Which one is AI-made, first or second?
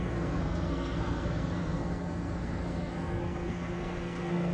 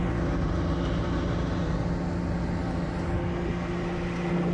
first